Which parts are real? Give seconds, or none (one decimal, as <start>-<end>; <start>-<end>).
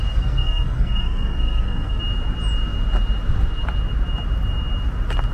2.0-5.3